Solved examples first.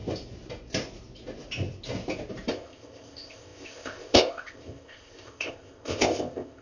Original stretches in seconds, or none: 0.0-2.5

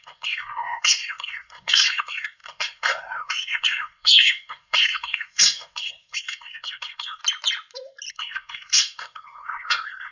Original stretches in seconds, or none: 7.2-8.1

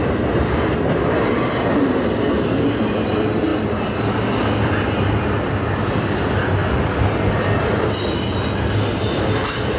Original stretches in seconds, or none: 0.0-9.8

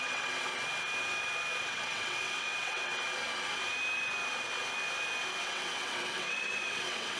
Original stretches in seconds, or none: 0.5-1.6; 2.9-5.4

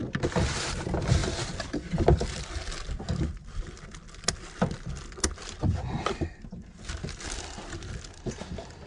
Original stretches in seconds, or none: 0.0-8.9

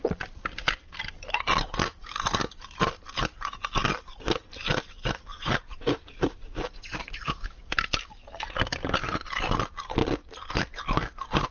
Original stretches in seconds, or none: 0.0-5.3; 7.8-11.5

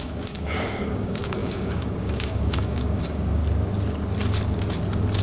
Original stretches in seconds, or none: 3.4-5.2